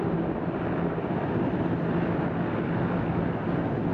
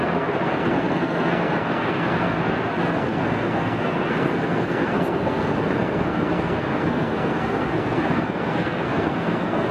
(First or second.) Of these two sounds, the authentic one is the first